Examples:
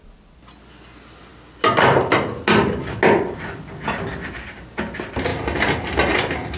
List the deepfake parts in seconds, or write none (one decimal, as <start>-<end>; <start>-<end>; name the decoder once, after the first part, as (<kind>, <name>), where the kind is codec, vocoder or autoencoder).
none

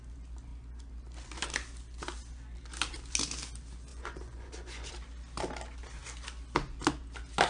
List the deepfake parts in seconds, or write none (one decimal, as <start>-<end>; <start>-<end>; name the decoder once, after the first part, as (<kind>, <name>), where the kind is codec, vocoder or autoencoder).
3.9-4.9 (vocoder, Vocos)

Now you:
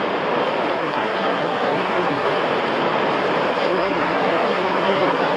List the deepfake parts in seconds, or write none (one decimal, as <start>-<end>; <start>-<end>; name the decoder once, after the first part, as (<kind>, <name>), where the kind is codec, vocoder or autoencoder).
0.7-2.4 (codec, SNAC); 3.5-5.4

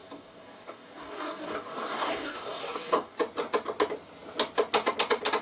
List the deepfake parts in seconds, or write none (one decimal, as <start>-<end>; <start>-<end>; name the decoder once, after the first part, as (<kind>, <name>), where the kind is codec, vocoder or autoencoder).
0.0-3.2 (codec, DAC)

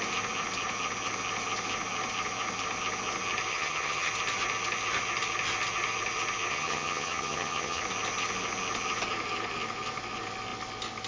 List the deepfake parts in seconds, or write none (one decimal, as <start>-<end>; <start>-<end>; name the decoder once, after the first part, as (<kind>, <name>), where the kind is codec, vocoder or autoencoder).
3.5-4.1 (vocoder, HiFi-GAN); 6.5-7.8

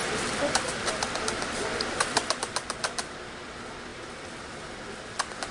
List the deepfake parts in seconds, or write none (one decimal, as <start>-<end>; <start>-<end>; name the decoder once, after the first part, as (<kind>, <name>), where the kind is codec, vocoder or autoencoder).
0.0-3.3 (vocoder, BigVGAN v2)

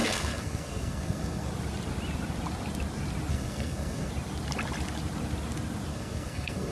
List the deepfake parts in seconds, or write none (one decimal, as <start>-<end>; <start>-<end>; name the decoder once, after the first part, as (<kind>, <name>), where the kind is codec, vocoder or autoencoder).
0.0-1.5 (codec, SNAC); 3.3-4.1; 5.9-6.7